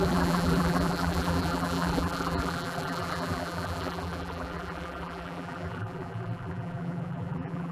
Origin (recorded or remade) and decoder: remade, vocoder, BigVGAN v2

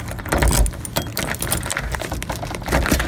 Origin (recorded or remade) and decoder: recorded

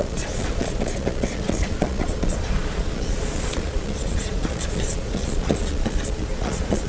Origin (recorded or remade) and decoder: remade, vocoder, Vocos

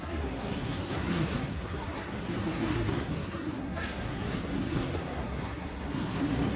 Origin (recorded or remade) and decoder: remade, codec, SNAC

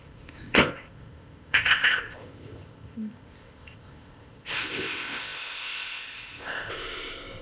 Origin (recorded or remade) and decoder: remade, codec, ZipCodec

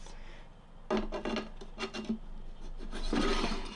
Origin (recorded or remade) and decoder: recorded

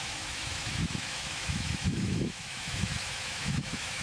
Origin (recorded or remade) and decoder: remade, autoencoder, DAC-VAE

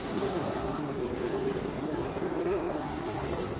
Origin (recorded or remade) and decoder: remade, codec, SNAC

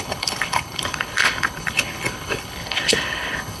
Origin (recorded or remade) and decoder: remade, codec, HILCodec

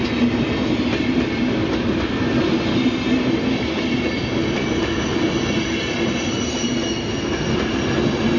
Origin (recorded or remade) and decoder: recorded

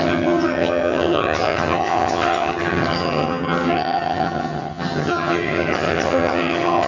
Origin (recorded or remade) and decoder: remade, vocoder, HiFi-GAN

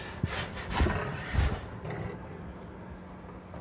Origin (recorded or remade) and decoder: recorded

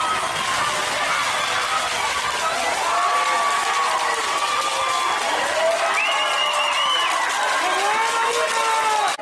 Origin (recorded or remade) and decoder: recorded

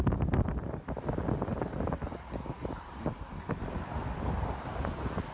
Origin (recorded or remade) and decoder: recorded